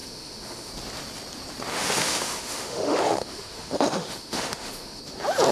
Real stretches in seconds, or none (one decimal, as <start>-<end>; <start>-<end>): 0.7-1.7; 5.0-5.5